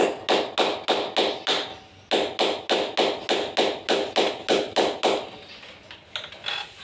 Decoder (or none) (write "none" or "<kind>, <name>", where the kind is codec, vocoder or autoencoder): none